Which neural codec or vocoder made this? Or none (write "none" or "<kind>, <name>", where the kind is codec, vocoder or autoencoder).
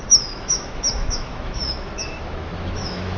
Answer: autoencoder, DAC-VAE